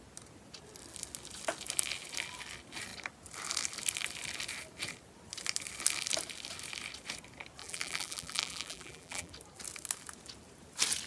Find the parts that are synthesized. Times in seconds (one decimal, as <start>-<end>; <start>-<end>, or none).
7.6-9.3